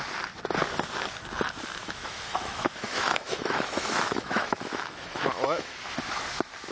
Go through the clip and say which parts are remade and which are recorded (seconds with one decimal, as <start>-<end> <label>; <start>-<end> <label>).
0.0-1.8 recorded; 1.8-5.8 remade; 5.8-6.7 recorded